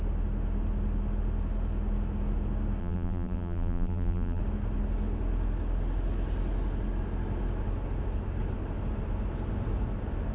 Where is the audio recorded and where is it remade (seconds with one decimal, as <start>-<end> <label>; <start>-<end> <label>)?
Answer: 0.0-2.8 recorded; 2.8-4.4 remade; 4.4-10.3 recorded